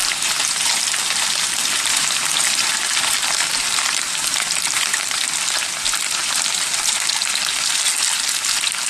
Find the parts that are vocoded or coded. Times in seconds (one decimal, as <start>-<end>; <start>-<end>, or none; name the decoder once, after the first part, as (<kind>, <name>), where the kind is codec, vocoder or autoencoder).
0.0-1.2 (vocoder, BigVGAN v2); 1.6-2.5; 3.5-5.2